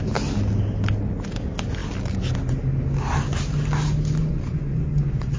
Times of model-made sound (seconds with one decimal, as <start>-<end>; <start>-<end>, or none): 4.2-5.4